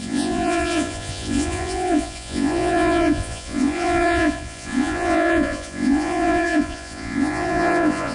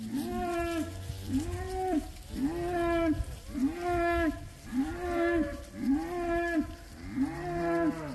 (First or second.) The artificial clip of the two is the first